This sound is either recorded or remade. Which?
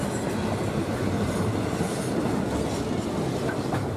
recorded